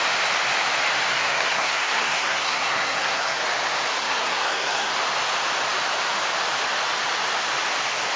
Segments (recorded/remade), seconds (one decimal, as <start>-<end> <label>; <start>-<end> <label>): 0.0-1.2 recorded; 1.2-3.4 remade; 3.4-4.0 recorded; 4.0-4.9 remade; 4.9-8.2 recorded